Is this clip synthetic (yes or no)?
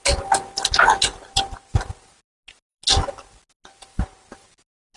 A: no